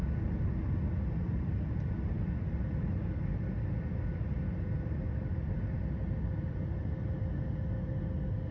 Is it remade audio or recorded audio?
recorded